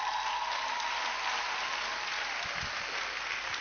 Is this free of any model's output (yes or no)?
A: yes